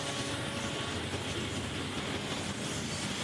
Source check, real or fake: real